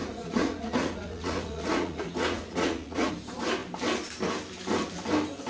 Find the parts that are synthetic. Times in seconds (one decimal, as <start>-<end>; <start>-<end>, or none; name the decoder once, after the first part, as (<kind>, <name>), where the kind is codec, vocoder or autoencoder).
0.0-3.1 (vocoder, Vocos)